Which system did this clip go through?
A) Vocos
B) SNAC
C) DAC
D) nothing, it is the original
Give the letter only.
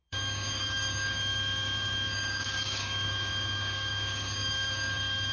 C